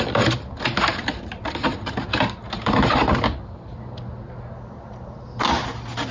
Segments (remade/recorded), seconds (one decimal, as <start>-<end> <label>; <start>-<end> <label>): 0.0-0.9 recorded; 0.9-3.0 remade; 3.0-6.1 recorded